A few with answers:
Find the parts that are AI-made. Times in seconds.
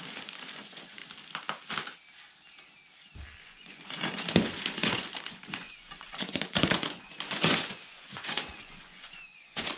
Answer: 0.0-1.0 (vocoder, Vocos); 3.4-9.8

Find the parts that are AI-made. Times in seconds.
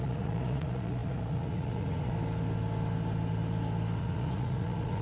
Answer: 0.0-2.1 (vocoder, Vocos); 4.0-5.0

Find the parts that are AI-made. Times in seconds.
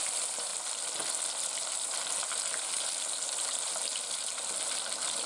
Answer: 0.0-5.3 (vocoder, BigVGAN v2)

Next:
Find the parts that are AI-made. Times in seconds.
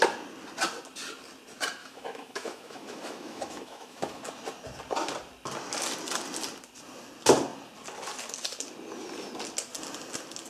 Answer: 1.8-4.2 (autoencoder, DAC-VAE)